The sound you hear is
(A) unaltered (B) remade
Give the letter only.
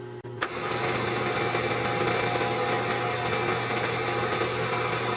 A